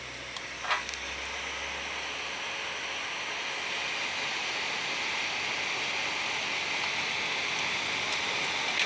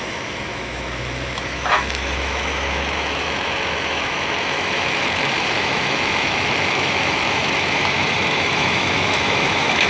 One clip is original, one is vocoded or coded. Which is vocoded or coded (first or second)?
second